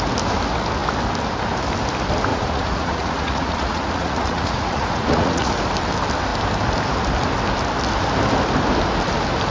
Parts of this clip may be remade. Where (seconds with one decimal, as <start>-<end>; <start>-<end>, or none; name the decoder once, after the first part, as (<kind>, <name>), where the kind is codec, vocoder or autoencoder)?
2.3-5.5 (vocoder, Vocos)